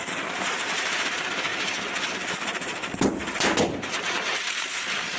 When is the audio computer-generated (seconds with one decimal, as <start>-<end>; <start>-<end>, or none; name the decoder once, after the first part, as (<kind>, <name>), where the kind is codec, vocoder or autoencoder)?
0.0-1.5 (vocoder, BigVGAN v2); 2.1-2.7; 3.7-5.2